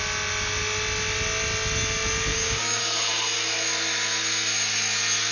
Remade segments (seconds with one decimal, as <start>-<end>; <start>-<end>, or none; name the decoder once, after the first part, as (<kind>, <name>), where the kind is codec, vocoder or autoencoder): 2.3-2.8 (codec, DAC)